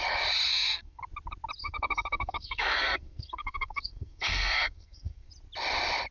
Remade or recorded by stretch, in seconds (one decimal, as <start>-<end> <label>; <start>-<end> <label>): 0.0-0.5 recorded; 0.5-1.0 remade; 1.0-1.6 recorded; 1.6-5.3 remade; 5.3-6.1 recorded